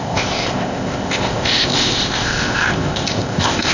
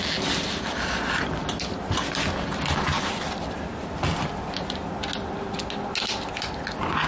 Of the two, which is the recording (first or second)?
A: second